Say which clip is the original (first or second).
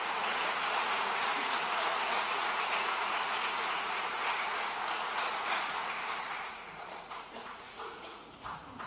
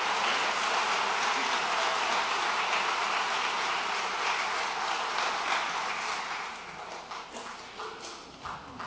second